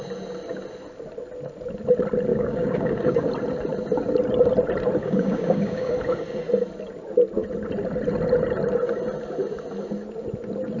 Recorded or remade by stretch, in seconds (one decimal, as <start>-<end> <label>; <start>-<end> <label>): 0.0-2.3 recorded; 2.3-3.3 remade; 3.3-5.0 recorded; 5.0-5.9 remade; 5.9-10.8 recorded